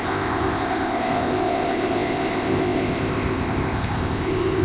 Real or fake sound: fake